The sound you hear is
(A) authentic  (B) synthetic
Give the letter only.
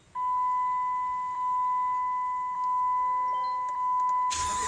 A